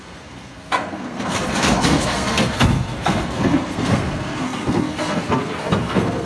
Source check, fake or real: fake